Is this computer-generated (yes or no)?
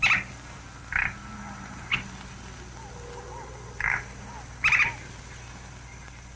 no